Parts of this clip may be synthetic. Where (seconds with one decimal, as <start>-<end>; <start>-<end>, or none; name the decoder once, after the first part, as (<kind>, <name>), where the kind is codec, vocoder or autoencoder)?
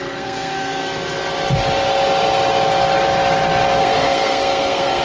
0.0-0.8 (codec, SNAC); 3.8-5.0